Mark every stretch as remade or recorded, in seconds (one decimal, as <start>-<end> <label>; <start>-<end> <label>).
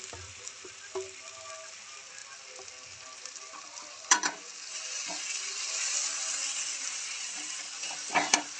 0.0-2.2 remade; 2.2-3.2 recorded; 3.2-4.5 remade; 4.5-6.8 recorded; 6.8-8.6 remade